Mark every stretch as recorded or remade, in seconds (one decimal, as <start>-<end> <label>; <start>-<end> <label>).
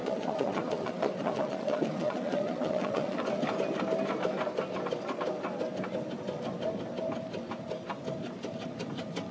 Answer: 0.0-3.2 remade; 3.2-9.3 recorded